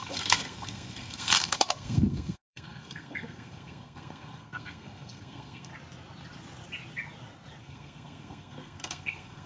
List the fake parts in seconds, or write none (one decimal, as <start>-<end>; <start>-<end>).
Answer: 0.0-5.7; 7.6-9.5